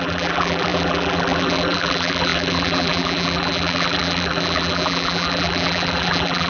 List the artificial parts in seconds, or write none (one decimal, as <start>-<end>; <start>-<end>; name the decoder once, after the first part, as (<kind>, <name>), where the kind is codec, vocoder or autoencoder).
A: 0.0-6.5 (vocoder, BigVGAN v2)